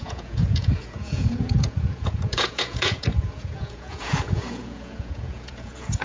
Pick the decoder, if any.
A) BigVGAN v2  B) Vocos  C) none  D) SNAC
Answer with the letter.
B